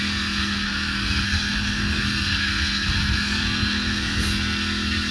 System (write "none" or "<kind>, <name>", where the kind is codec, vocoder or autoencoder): codec, SNAC